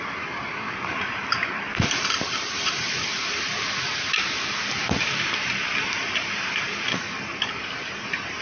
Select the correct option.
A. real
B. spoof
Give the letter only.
B